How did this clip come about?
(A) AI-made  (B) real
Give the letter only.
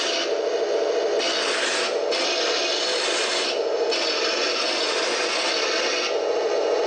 B